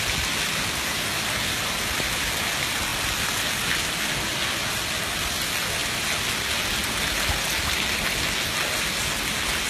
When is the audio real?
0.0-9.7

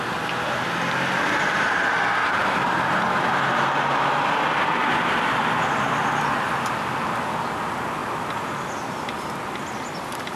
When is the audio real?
0.0-10.4

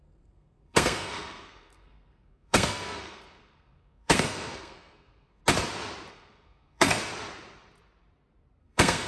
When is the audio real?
5.4-6.1; 7.1-8.6

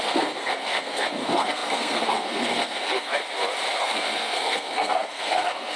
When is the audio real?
3.1-3.8

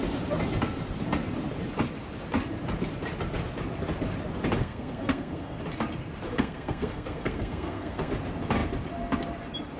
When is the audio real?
0.0-4.6; 5.6-6.3; 8.1-9.8

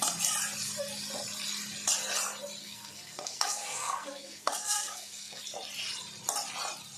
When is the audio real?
0.0-2.6; 5.4-7.0